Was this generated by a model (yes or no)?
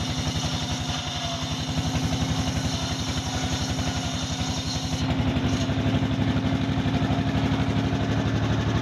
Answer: no